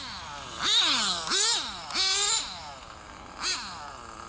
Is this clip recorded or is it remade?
recorded